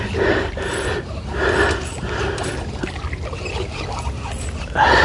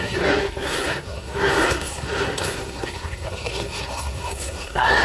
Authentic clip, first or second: first